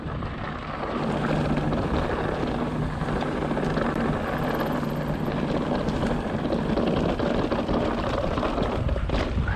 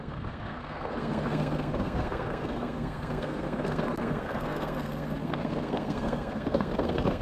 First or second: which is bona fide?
first